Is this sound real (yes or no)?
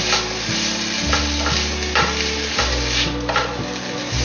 yes